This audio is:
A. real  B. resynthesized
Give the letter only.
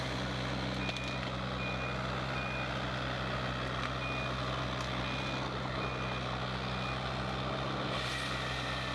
A